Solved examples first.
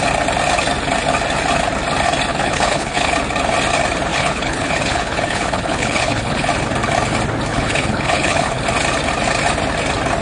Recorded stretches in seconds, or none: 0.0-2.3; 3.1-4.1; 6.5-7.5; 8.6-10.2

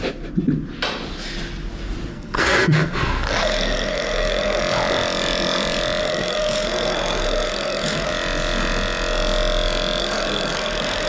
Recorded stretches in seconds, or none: 0.0-2.1; 4.6-6.0; 8.1-10.0

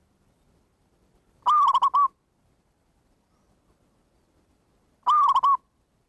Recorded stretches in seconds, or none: 0.0-6.1